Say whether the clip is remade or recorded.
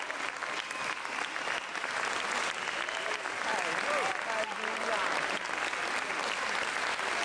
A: recorded